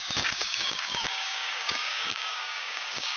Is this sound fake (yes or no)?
yes